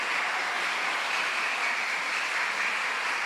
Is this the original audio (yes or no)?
yes